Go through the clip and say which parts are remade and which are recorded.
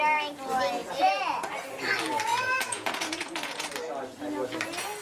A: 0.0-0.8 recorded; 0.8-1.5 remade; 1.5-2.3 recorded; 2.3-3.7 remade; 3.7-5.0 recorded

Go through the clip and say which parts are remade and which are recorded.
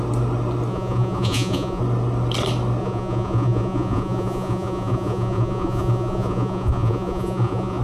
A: 0.0-0.7 recorded; 0.7-1.8 remade; 1.8-2.8 recorded; 2.8-7.8 remade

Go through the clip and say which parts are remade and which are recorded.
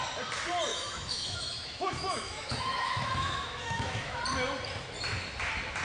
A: 0.0-0.7 recorded; 0.7-4.2 remade; 4.2-5.8 recorded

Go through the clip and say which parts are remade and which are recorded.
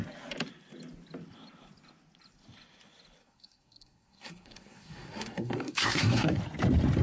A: 0.0-3.2 recorded; 3.2-6.4 remade; 6.4-7.0 recorded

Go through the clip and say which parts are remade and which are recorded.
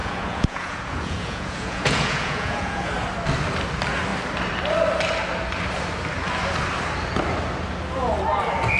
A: 0.0-2.9 remade; 2.9-8.8 recorded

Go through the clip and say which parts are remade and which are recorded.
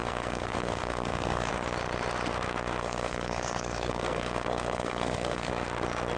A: 0.0-1.5 remade; 1.5-2.8 recorded; 2.8-5.5 remade; 5.5-6.2 recorded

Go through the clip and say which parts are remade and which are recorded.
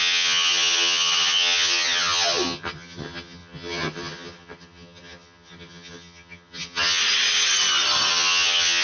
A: 0.0-7.0 remade; 7.0-8.1 recorded; 8.1-8.8 remade